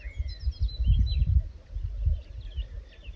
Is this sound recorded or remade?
recorded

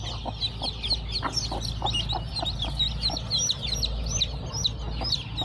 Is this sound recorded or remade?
recorded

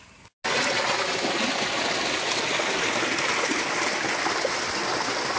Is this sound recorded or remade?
recorded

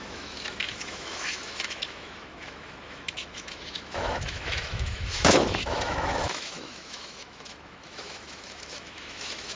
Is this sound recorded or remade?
remade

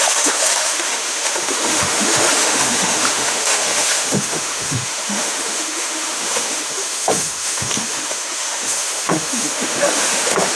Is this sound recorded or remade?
remade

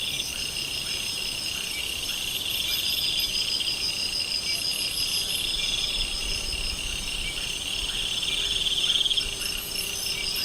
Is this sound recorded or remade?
recorded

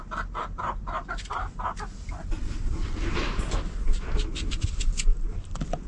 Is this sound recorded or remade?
recorded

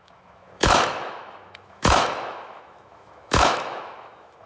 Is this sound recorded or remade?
remade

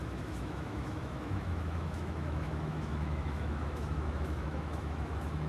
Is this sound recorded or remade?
remade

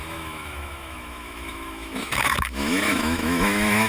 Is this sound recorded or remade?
remade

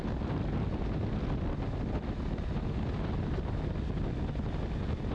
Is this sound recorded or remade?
recorded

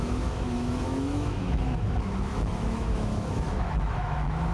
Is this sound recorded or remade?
remade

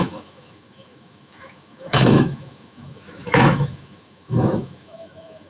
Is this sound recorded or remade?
remade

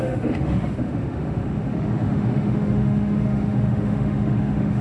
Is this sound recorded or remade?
remade